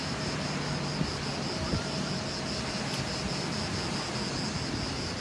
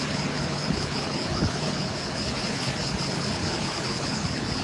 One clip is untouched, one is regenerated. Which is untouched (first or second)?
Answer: first